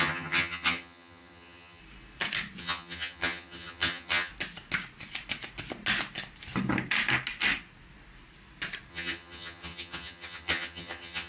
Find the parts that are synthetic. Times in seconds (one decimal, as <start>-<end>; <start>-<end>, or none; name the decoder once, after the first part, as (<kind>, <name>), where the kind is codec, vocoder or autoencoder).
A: 0.0-1.8 (vocoder, HiFi-GAN); 2.6-4.3; 8.9-11.3